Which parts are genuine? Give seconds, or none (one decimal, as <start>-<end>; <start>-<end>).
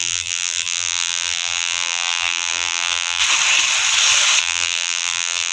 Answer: 3.2-4.4